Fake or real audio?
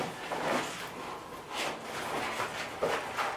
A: real